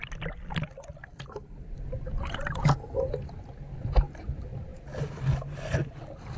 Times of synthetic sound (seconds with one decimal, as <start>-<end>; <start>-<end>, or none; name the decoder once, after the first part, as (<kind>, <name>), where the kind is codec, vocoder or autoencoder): none